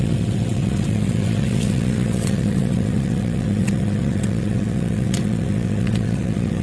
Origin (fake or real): fake